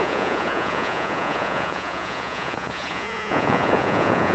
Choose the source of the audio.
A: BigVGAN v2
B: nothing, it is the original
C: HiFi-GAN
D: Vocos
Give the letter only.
D